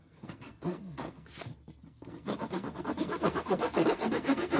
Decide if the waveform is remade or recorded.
remade